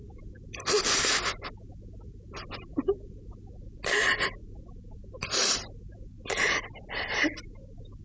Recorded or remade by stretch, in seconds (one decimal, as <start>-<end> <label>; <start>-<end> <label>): 0.0-8.0 recorded